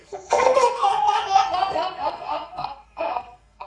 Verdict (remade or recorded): remade